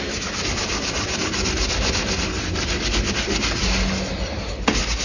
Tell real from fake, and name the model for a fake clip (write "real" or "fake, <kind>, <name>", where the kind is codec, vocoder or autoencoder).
real